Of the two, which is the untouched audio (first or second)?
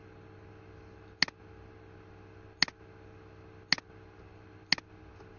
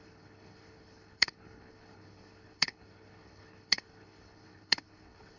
first